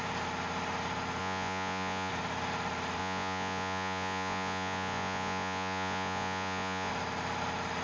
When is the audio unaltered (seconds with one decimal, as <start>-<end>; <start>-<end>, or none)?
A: 0.0-1.2; 2.1-3.0; 6.9-7.8